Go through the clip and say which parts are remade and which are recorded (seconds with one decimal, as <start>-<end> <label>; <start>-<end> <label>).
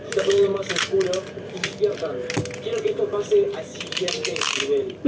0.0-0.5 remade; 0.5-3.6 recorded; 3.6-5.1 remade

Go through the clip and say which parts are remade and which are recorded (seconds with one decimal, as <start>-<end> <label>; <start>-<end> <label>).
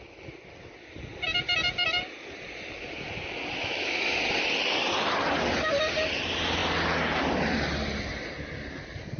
0.0-3.6 recorded; 3.6-4.2 remade; 4.2-9.2 recorded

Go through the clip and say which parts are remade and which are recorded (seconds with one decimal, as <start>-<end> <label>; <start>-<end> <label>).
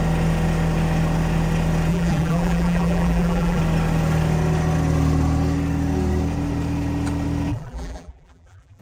0.0-1.9 recorded; 1.9-3.6 remade; 3.6-7.5 recorded; 7.5-8.8 remade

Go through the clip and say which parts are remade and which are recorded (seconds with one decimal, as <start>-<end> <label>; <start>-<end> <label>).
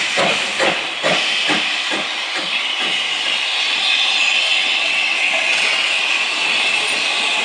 0.0-4.5 recorded; 4.5-6.0 remade; 6.0-7.4 recorded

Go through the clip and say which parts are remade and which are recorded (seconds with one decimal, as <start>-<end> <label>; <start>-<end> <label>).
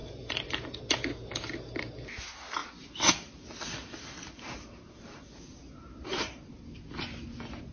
0.0-0.8 remade; 0.8-2.6 recorded; 2.6-6.5 remade; 6.5-7.7 recorded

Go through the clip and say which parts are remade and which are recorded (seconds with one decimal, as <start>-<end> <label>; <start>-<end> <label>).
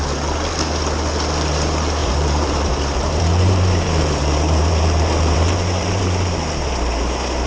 0.0-2.0 recorded; 2.0-6.5 remade; 6.5-7.5 recorded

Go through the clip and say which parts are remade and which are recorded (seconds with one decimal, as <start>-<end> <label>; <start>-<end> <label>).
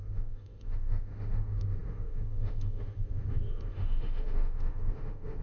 0.0-5.4 remade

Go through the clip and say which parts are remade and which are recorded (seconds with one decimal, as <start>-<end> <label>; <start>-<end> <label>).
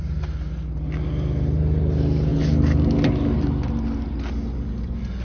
0.0-5.2 recorded